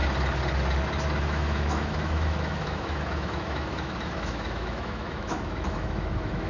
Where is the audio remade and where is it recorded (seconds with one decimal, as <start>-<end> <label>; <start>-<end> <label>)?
0.0-1.2 recorded; 1.2-6.5 remade